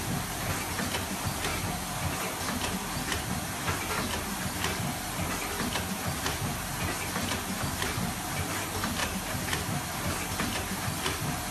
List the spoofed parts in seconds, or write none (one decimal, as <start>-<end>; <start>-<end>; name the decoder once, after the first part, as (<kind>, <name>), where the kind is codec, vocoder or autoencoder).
none